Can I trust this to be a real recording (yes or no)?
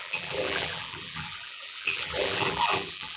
no